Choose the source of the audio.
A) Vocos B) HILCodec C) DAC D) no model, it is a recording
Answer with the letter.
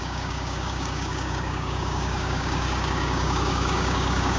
C